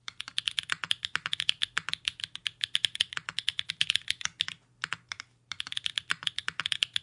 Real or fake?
real